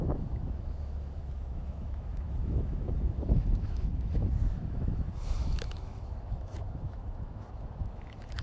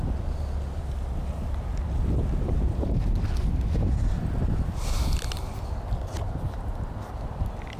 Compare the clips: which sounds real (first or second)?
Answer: second